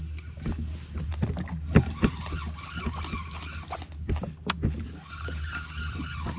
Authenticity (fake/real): real